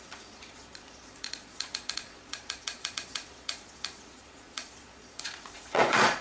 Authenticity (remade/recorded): remade